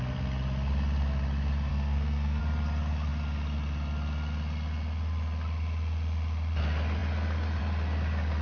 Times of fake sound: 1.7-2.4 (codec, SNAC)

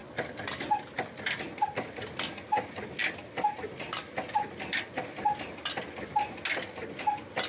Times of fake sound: none

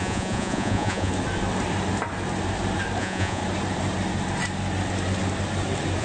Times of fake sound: 0.0-1.1 (vocoder, Vocos); 3.0-3.4

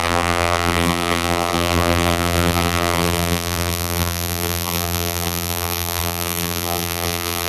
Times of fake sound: 0.0-7.5 (vocoder, BigVGAN v2)

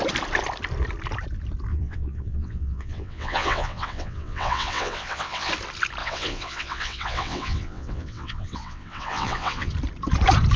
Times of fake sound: 1.7-5.5 (vocoder, WaveNeXt); 6.0-9.7

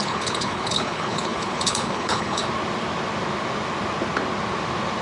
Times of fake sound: 0.0-2.4 (codec, HILCodec)

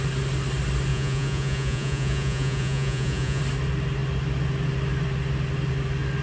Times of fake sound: 0.9-3.4 (vocoder, Vocos)